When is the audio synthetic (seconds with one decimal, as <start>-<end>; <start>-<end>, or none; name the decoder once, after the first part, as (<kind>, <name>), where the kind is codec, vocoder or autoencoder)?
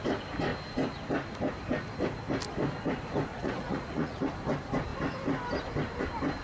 3.3-4.2 (vocoder, Vocos)